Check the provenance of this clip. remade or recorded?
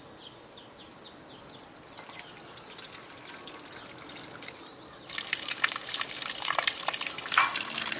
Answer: recorded